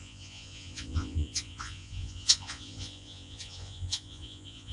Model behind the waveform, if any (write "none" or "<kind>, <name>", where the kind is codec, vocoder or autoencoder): vocoder, Vocos